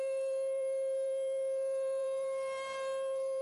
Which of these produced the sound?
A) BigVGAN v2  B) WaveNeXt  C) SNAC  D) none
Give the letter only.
A